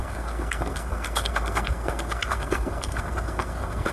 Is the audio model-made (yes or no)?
yes